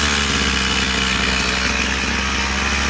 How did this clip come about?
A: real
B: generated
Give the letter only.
A